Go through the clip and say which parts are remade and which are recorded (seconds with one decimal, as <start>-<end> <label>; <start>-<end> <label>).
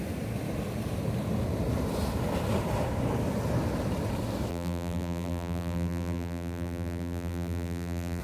0.0-4.5 recorded; 4.5-8.2 remade